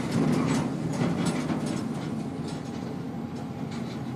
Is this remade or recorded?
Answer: recorded